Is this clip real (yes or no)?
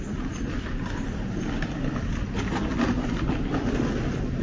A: yes